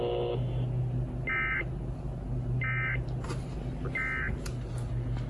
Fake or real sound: real